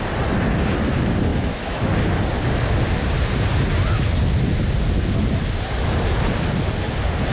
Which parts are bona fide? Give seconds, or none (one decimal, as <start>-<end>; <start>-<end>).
0.0-1.3; 1.9-7.3